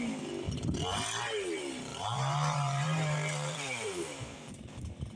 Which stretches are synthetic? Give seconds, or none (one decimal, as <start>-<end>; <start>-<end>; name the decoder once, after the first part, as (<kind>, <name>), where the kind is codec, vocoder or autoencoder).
1.9-5.2 (vocoder, BigVGAN v2)